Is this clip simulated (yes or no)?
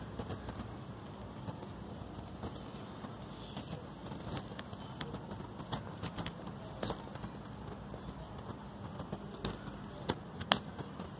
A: no